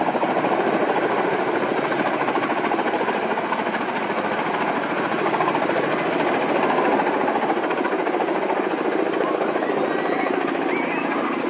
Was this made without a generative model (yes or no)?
yes